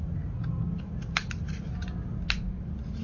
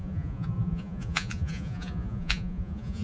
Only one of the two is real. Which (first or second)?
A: first